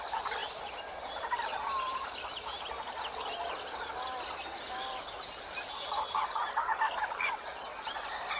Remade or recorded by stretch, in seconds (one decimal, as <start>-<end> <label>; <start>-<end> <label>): 0.0-8.4 recorded